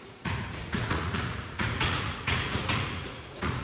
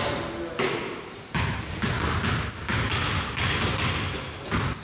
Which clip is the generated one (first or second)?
first